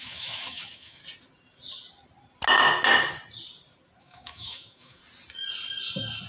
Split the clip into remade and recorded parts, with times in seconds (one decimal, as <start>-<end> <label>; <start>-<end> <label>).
0.0-1.0 remade; 1.0-4.0 recorded; 4.0-5.0 remade; 5.0-6.3 recorded